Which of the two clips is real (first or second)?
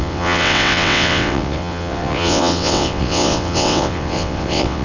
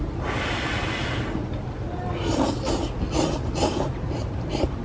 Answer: second